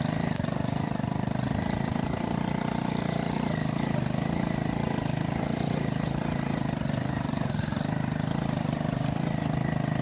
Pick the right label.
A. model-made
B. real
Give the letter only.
B